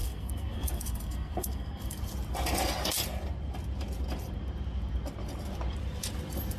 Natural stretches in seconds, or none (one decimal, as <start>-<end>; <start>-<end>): 2.0-6.6